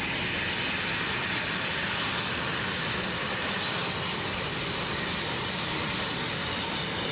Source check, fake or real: real